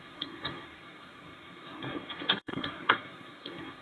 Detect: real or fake fake